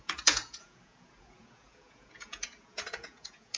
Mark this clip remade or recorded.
remade